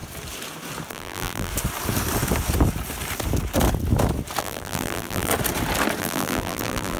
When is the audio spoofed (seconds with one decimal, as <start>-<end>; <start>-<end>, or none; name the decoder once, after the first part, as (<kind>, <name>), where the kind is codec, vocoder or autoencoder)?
0.9-1.5 (vocoder, BigVGAN v2); 4.4-5.3; 6.0-7.0